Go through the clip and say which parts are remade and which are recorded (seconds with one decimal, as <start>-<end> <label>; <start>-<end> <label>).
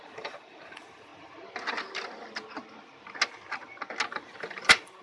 0.0-1.1 remade; 1.1-4.1 recorded; 4.1-5.0 remade